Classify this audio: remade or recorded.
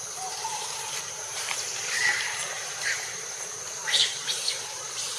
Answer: remade